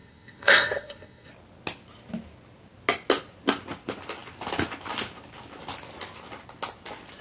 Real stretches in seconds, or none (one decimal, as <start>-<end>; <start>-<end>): 1.3-7.2